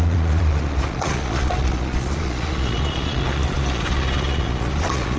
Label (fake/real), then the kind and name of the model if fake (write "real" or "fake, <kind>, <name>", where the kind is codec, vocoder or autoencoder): fake, vocoder, Vocos